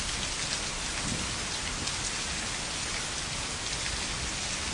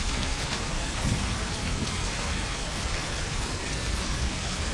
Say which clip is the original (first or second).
first